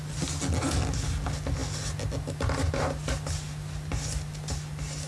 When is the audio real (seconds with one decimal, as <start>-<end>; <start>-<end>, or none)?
0.0-5.1

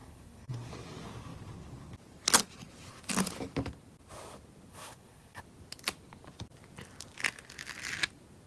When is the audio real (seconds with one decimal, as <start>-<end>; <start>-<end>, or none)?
0.7-4.7; 5.4-8.5

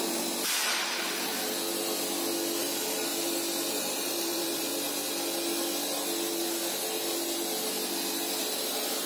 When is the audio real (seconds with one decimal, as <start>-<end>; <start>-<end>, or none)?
1.3-2.6; 3.1-3.7; 4.7-8.4

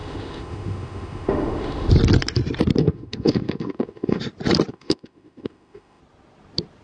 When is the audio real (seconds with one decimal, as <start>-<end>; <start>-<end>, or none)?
1.9-2.8; 4.2-4.7; 6.0-6.8

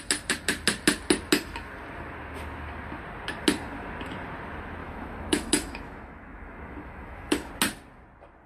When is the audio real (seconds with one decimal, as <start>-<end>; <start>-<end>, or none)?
0.0-4.8; 7.5-8.5

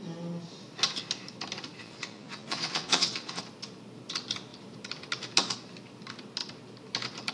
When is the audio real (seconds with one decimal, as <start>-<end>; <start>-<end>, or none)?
0.0-1.8; 3.4-7.3

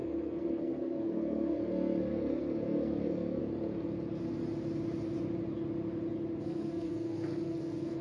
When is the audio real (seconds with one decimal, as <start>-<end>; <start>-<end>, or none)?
3.4-6.4

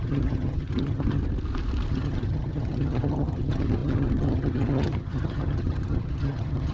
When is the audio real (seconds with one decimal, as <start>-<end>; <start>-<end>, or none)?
1.2-1.9